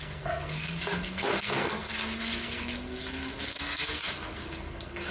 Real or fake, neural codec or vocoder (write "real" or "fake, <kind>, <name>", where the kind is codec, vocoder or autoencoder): fake, codec, SNAC